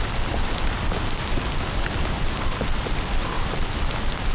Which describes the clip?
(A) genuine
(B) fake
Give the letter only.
A